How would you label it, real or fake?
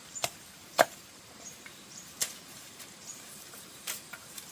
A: fake